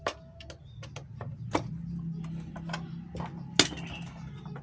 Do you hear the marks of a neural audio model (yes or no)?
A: no